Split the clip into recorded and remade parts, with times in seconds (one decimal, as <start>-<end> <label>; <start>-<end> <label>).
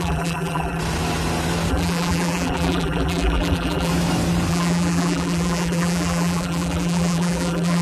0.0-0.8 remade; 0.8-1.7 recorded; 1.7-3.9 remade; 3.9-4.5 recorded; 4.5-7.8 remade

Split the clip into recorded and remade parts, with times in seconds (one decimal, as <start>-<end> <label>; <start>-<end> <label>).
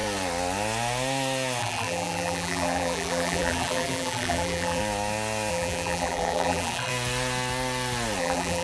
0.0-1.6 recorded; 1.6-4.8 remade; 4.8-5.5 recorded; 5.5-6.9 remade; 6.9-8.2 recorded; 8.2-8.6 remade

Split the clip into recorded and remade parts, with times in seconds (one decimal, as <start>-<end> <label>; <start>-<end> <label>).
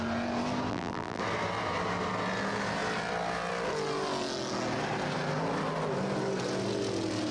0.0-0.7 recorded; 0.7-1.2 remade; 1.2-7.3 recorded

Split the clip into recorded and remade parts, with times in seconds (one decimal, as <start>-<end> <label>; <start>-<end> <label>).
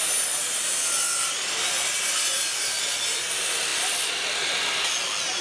0.0-5.4 recorded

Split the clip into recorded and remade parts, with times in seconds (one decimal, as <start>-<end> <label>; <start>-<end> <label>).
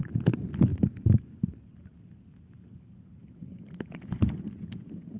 0.0-5.2 recorded